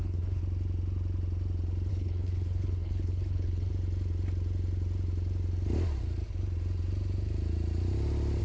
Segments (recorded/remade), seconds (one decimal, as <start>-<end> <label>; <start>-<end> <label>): 0.0-0.4 remade; 0.4-1.9 recorded; 1.9-3.7 remade; 3.7-8.4 recorded